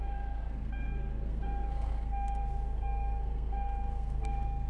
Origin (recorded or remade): remade